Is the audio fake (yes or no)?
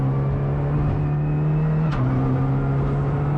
no